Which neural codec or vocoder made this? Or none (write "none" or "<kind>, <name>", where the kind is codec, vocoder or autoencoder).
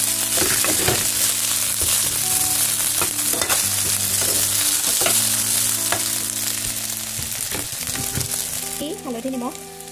none